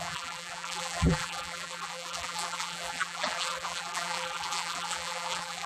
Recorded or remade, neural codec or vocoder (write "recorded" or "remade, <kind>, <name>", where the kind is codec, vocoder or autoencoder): remade, vocoder, BigVGAN v2